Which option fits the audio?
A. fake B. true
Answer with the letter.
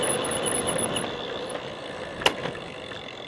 B